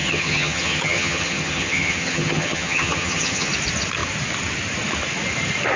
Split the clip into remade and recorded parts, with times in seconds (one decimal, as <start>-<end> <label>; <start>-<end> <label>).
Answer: 0.0-3.5 remade; 3.5-5.8 recorded